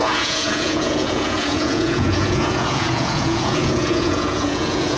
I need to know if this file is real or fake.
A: fake